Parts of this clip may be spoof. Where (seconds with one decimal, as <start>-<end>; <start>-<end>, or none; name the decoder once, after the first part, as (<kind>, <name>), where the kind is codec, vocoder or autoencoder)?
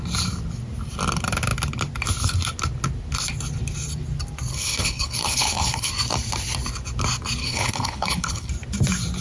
4.5-5.9 (codec, HILCodec); 7.4-8.5